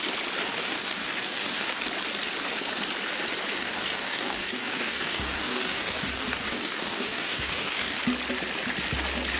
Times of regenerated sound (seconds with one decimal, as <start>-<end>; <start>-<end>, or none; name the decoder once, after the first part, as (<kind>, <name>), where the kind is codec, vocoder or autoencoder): 0.4-1.8 (codec, DAC); 3.6-8.0